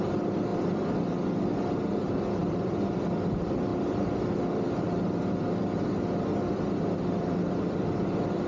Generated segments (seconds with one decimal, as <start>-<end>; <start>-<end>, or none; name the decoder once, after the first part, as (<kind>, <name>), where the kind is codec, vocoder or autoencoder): 0.0-0.5 (vocoder, BigVGAN v2); 1.7-3.7; 6.8-8.5